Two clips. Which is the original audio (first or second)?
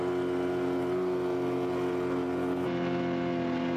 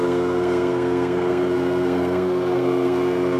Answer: first